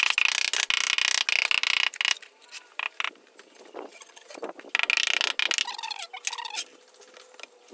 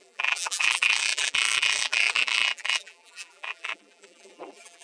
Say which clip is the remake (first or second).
second